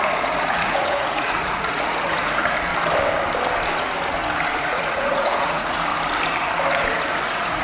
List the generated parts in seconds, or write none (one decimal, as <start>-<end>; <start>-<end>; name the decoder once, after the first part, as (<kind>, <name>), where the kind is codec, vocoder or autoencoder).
0.0-2.7 (vocoder, Vocos); 4.6-5.9; 7.1-7.6